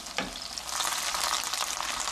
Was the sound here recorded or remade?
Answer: recorded